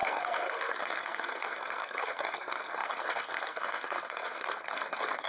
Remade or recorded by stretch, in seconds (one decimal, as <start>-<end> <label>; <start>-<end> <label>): 0.0-5.3 remade